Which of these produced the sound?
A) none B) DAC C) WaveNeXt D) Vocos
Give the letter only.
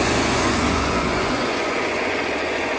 D